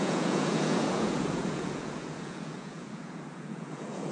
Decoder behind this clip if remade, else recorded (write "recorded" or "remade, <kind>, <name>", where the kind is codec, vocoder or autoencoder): remade, vocoder, Vocos